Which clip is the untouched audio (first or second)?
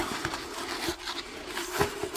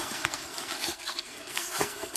first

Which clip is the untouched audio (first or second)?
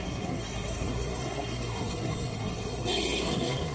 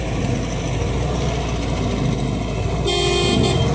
second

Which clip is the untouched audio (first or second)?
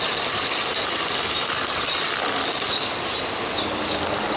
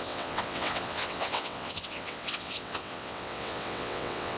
first